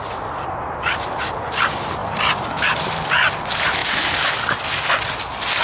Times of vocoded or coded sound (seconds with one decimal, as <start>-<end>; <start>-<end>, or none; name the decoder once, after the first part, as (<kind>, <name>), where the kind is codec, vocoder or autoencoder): none